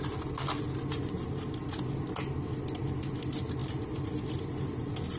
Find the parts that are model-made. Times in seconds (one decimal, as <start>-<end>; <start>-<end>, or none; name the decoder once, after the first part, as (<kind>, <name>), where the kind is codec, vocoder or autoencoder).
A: 3.6-4.6 (vocoder, BigVGAN v2)